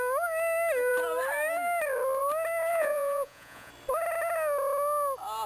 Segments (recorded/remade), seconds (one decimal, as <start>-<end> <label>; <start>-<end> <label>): 0.0-2.7 recorded; 2.7-3.7 remade; 3.7-5.5 recorded